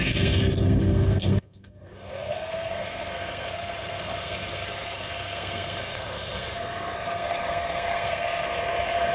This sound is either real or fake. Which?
fake